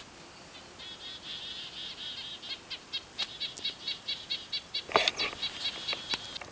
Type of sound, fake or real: real